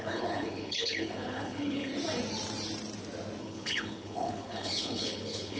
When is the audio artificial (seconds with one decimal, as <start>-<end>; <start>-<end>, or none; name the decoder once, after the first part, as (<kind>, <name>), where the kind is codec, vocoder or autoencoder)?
0.0-1.9 (codec, HILCodec); 3.4-5.6